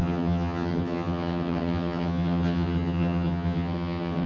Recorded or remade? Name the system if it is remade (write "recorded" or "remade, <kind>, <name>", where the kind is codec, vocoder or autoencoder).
remade, vocoder, HiFi-GAN